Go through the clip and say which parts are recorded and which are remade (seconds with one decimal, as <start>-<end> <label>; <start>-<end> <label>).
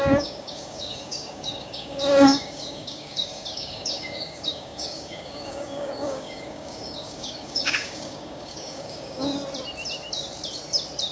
0.0-9.3 remade; 9.3-11.1 recorded